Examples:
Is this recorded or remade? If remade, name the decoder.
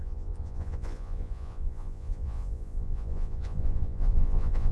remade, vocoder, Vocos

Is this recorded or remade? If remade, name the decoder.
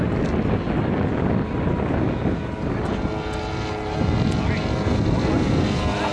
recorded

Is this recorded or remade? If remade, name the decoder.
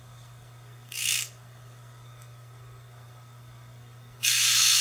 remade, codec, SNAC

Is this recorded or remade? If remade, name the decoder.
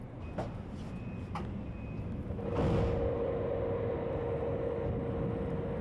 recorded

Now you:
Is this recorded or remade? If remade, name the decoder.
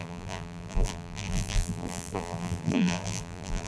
remade, vocoder, BigVGAN v2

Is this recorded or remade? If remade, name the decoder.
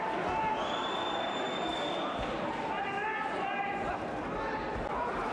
recorded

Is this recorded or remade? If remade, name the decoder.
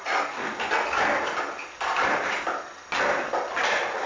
recorded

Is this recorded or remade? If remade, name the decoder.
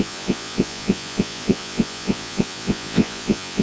remade, vocoder, Vocos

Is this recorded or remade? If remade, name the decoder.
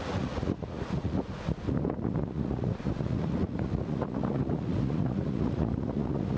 remade, vocoder, Vocos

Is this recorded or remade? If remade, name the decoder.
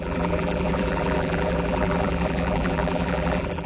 remade, vocoder, BigVGAN v2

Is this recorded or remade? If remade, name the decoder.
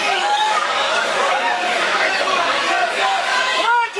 remade, codec, DAC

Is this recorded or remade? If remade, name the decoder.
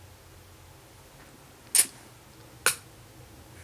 recorded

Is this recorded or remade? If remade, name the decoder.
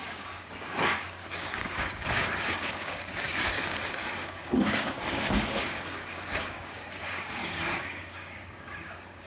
remade, codec, DAC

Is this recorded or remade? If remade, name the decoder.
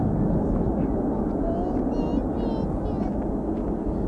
recorded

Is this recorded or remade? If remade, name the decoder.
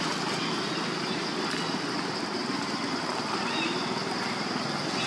recorded